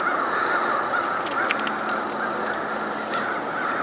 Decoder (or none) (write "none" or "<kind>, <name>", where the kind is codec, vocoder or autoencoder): none